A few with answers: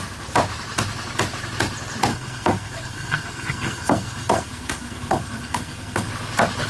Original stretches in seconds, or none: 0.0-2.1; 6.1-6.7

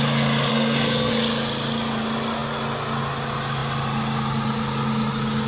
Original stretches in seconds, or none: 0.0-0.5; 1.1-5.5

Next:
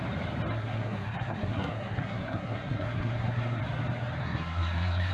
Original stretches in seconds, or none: 0.0-0.5; 3.6-4.2

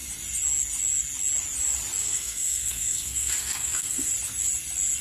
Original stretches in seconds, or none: 0.0-2.0; 4.1-5.0